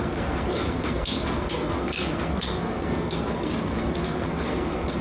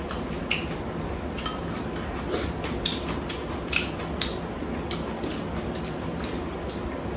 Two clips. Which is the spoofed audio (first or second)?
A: first